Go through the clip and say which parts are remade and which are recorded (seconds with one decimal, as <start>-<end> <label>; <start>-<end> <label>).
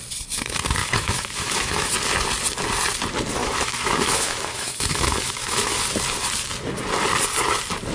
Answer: 0.0-0.8 recorded; 0.8-1.9 remade; 1.9-3.4 recorded; 3.4-5.8 remade; 5.8-7.9 recorded